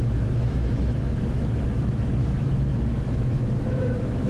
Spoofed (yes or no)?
yes